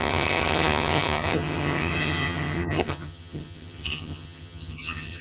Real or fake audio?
fake